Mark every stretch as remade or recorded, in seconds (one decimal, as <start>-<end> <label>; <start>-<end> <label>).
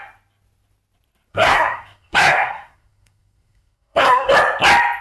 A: 0.0-1.3 recorded; 1.3-4.3 remade; 4.3-5.0 recorded